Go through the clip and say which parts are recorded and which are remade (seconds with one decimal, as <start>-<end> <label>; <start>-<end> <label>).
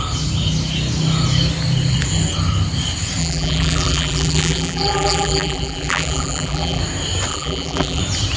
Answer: 0.0-3.2 recorded; 3.2-6.8 remade; 6.8-7.3 recorded; 7.3-8.0 remade; 8.0-8.4 recorded